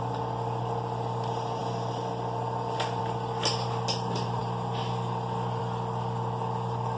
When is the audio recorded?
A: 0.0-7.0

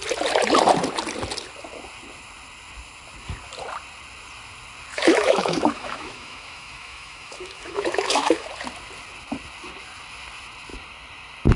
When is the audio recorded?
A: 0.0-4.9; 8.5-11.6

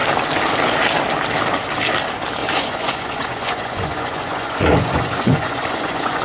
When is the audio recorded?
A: 0.0-2.4

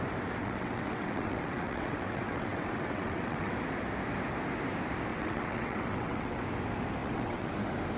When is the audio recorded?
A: 0.0-0.4; 3.5-5.1; 6.4-7.0; 7.5-8.0

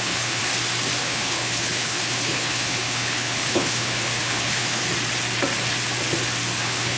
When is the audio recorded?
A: 0.4-1.0; 4.8-6.6

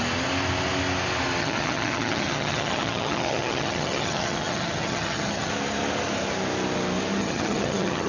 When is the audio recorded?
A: 0.0-1.4; 5.5-7.2